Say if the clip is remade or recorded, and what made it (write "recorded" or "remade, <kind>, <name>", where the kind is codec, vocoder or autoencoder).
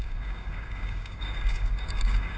remade, codec, DAC